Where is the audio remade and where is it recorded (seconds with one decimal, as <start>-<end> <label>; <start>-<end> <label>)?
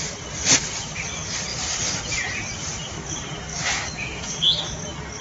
0.0-3.5 recorded; 3.5-4.6 remade; 4.6-5.2 recorded